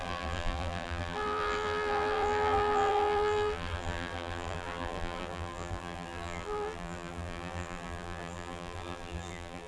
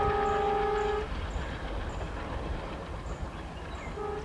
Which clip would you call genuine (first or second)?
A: second